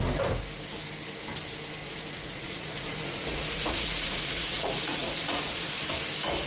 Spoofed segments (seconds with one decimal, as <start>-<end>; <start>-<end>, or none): 1.8-5.7